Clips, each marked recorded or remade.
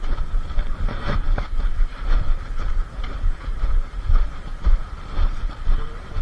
recorded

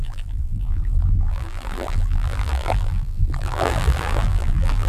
remade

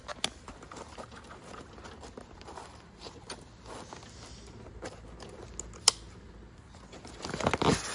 recorded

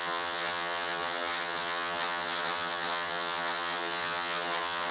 remade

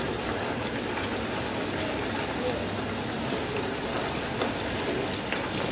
recorded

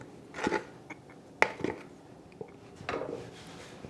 recorded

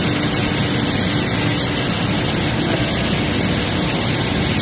recorded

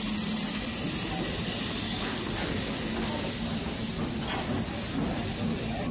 recorded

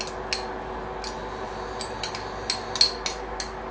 recorded